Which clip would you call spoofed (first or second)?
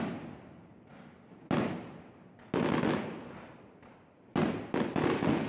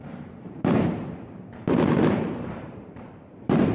second